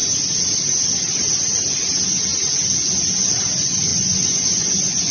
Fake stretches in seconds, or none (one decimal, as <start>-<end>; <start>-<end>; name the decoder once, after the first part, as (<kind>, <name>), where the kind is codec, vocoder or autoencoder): 3.9-5.1 (vocoder, Vocos)